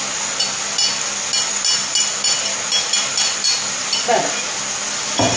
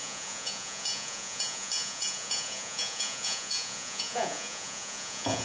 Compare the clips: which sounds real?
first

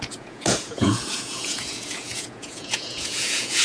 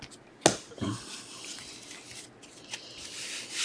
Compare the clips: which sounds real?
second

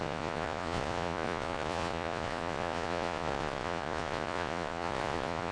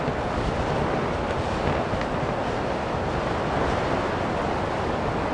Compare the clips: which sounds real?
second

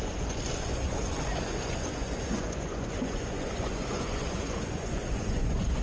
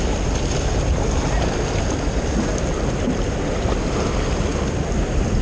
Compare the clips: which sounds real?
second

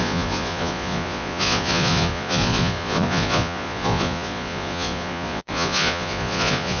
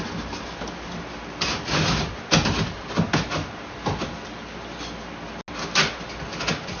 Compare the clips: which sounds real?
second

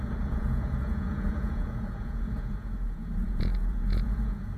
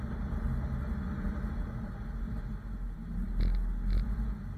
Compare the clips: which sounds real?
second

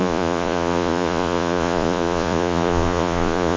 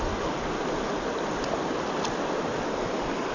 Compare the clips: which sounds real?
second